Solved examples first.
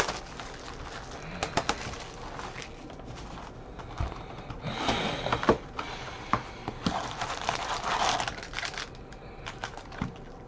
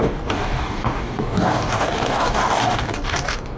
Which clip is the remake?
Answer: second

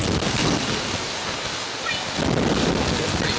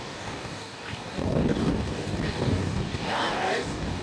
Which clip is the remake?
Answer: second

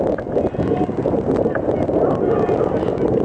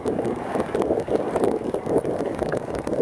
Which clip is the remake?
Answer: second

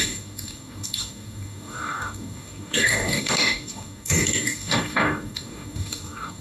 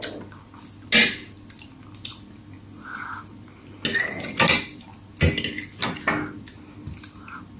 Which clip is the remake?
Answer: first